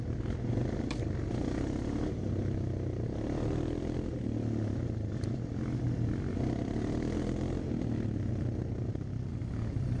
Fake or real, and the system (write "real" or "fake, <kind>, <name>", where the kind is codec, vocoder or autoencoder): real